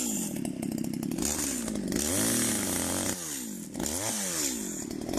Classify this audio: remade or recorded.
recorded